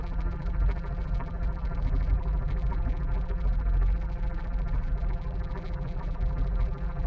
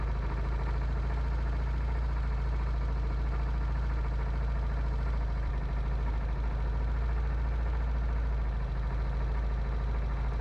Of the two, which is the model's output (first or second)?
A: first